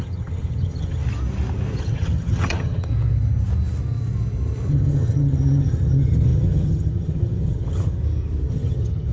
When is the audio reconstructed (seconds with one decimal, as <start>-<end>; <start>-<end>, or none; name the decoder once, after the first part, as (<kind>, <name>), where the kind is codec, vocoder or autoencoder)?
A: 0.0-1.0 (vocoder, HiFi-GAN); 1.8-2.9; 4.7-8.0; 8.5-9.1